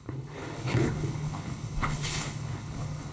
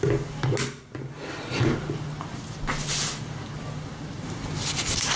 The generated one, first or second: first